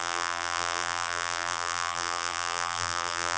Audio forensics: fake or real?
fake